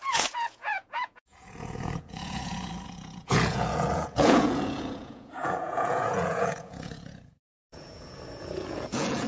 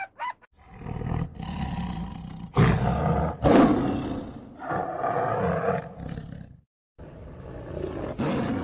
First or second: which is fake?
first